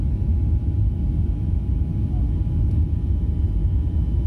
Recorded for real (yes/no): yes